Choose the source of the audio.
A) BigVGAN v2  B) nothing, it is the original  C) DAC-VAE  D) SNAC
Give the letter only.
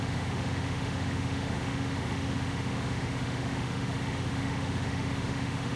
C